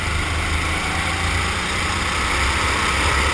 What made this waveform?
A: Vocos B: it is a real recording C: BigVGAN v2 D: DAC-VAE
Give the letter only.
B